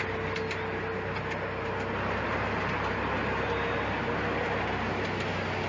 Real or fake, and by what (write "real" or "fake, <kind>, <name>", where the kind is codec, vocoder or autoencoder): real